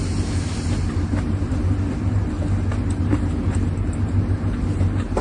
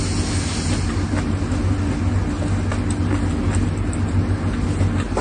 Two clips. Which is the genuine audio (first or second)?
second